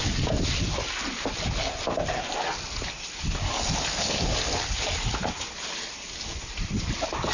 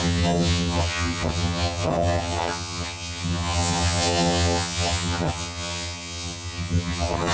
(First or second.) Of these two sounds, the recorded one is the first